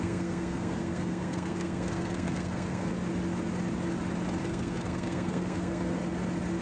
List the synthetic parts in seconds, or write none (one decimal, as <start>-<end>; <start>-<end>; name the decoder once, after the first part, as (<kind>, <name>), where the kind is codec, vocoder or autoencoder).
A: 0.0-2.9 (codec, SNAC); 4.4-6.0